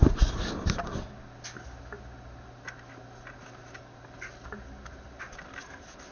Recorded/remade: recorded